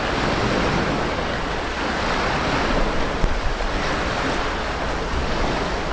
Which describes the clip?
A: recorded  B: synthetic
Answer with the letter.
A